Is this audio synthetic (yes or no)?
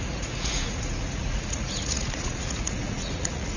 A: yes